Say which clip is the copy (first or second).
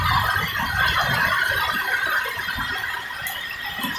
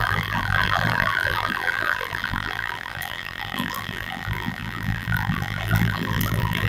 second